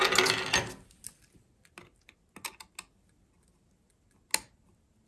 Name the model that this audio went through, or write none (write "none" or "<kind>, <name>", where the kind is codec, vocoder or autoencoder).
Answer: none